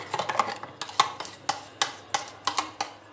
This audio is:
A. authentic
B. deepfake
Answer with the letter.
A